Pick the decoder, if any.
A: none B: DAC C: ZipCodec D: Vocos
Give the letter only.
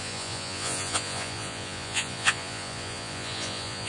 D